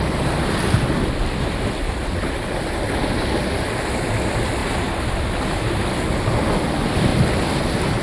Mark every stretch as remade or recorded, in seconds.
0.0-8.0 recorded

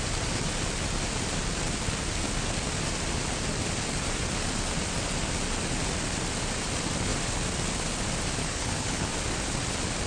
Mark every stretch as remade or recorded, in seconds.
0.0-8.4 recorded; 8.4-9.1 remade; 9.1-10.1 recorded

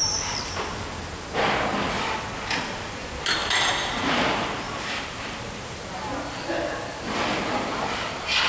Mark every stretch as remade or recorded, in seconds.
0.0-8.5 recorded

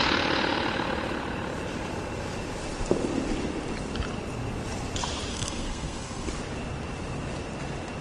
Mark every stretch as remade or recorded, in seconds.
0.0-5.3 recorded; 5.3-6.3 remade; 6.3-8.0 recorded

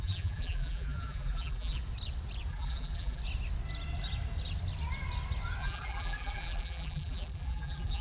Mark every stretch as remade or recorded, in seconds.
0.0-1.8 remade; 1.8-2.5 recorded; 2.5-3.2 remade; 3.2-5.6 recorded; 5.6-8.0 remade